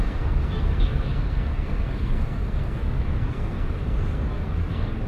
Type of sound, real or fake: fake